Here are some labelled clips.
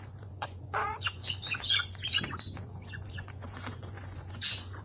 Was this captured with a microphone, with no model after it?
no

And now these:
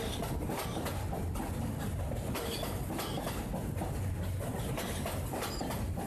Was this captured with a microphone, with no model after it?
yes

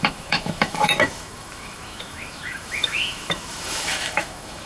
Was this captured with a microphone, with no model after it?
no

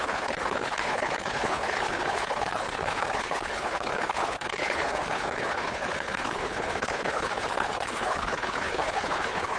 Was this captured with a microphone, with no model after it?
no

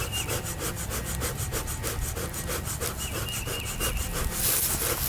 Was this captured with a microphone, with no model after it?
yes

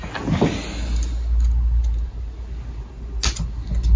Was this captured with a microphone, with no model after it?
yes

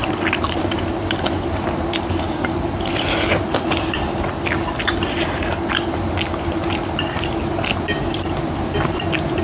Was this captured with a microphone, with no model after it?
no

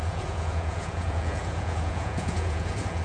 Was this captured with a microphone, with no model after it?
no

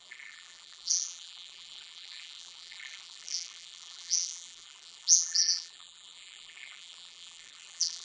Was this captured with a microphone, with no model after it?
no